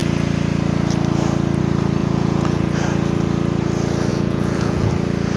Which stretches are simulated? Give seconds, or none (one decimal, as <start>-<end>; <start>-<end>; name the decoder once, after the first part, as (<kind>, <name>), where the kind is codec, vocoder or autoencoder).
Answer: 2.0-2.7 (vocoder, Vocos); 4.1-4.9